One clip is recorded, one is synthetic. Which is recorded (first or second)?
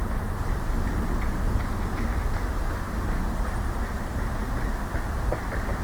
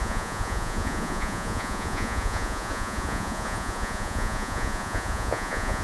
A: first